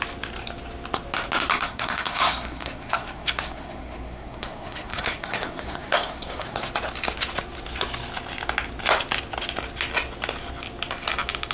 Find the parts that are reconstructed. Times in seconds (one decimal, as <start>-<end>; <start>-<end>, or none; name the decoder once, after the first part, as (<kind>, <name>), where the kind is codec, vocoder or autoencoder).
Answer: 1.5-6.7 (codec, SNAC)